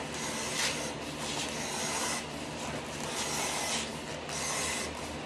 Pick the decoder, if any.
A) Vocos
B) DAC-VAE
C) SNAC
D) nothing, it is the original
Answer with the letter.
D